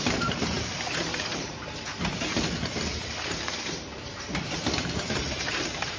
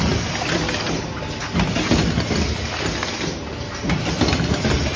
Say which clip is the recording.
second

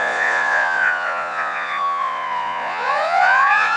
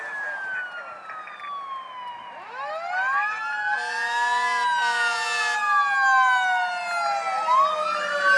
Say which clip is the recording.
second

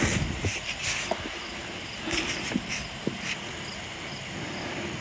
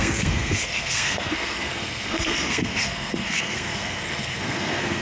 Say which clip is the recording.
first